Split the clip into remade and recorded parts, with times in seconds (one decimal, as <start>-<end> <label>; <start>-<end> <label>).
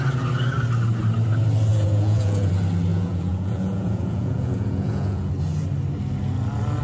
0.0-1.7 recorded; 1.7-2.5 remade; 2.5-2.9 recorded; 2.9-5.3 remade; 5.3-6.8 recorded